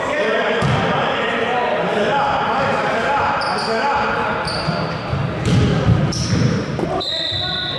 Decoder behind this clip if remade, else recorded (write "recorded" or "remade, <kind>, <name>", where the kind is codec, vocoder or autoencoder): remade, vocoder, BigVGAN v2